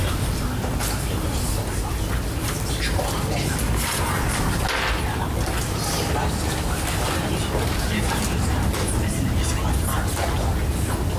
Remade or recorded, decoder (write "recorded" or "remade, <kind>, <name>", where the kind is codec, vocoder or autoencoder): recorded